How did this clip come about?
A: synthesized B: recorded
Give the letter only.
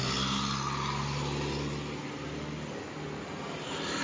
B